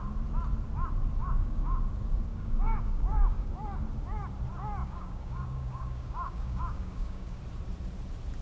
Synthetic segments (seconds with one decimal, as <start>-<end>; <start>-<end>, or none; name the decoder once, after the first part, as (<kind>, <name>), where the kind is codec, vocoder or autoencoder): 1.2-1.8 (codec, DAC); 2.3-3.5; 4.8-7.4